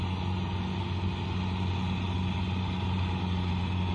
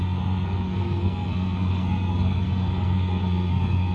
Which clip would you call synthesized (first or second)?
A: second